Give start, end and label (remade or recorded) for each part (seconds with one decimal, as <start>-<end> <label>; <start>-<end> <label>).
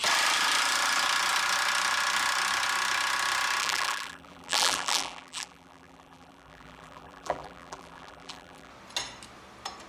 0.0-3.6 recorded; 3.6-8.7 remade; 8.7-9.9 recorded